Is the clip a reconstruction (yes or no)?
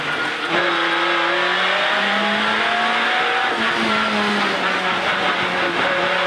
no